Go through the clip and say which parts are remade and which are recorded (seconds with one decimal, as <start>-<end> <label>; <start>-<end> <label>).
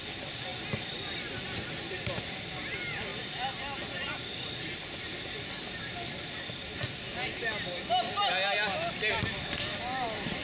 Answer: 0.0-10.4 recorded